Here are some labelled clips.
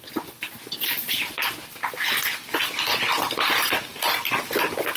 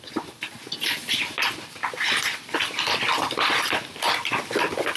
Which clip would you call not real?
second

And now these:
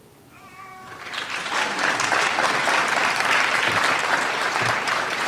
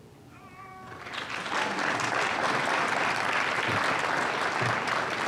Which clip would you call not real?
first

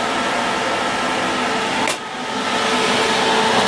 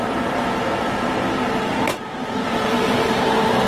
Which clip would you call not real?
second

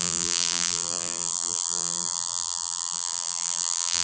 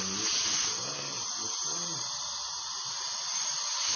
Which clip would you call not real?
first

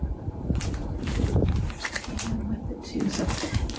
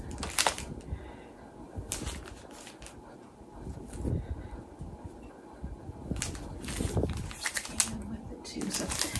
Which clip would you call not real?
first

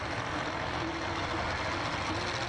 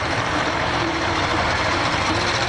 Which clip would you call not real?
second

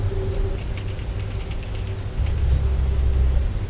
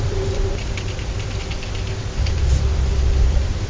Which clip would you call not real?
second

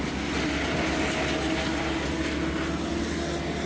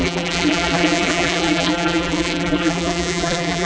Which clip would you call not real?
second